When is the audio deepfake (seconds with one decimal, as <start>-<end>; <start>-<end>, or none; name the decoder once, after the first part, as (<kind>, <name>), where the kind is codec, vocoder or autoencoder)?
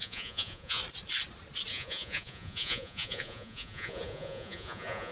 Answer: 0.0-0.8 (vocoder, Vocos); 1.7-5.1